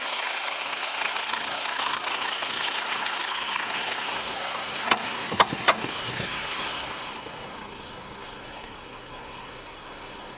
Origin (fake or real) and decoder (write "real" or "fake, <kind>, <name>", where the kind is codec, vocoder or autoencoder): fake, codec, SNAC